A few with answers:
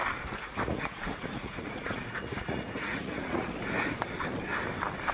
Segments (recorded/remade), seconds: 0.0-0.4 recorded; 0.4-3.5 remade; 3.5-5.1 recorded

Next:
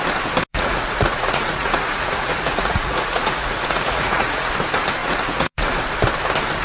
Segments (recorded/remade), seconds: 0.0-0.5 recorded; 0.5-4.5 remade; 4.5-5.0 recorded; 5.0-5.7 remade; 5.7-6.6 recorded

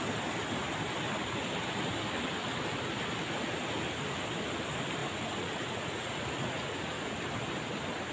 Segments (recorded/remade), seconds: 0.0-5.0 recorded; 5.0-7.2 remade; 7.2-8.1 recorded